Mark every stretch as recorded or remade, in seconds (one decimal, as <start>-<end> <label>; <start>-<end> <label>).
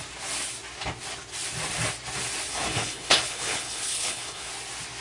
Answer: 0.0-2.5 recorded; 2.5-4.5 remade; 4.5-5.0 recorded